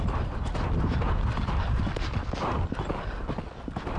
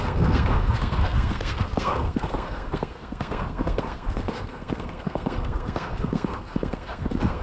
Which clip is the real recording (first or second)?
first